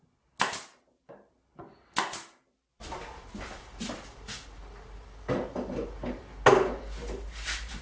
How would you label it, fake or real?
real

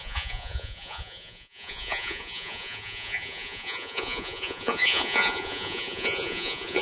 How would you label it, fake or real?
fake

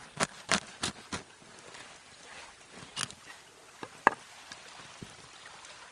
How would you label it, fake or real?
real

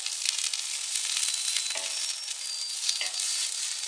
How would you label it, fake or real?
real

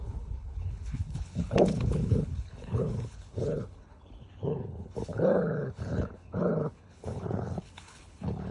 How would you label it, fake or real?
fake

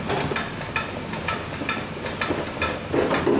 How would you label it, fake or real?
real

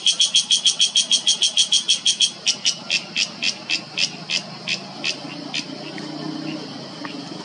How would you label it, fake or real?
real